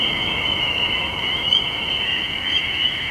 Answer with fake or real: fake